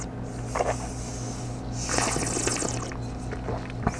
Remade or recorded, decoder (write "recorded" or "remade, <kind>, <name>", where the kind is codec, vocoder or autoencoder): recorded